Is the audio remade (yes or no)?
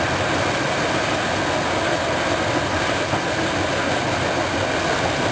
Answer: no